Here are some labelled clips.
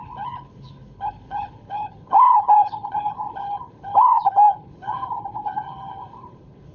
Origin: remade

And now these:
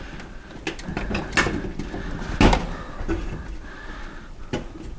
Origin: recorded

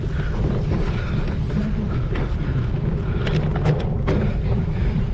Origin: recorded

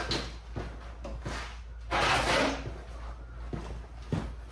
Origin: recorded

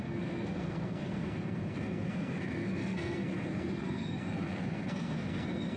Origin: remade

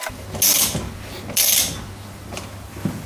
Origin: recorded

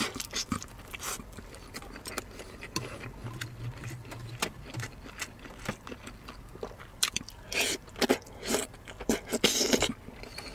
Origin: recorded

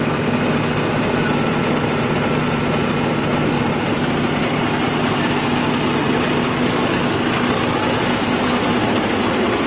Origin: recorded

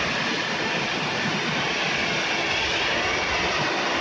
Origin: recorded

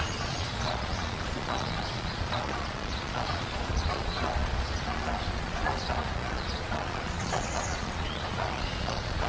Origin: remade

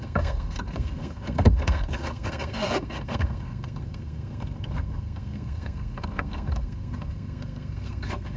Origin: remade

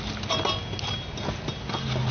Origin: recorded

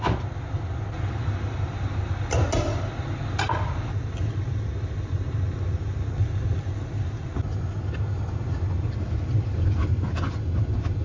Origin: recorded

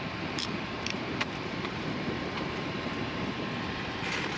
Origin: remade